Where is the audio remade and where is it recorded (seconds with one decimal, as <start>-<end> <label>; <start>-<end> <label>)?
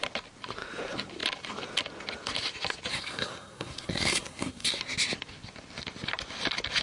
0.0-2.9 recorded; 2.9-4.8 remade; 4.8-6.8 recorded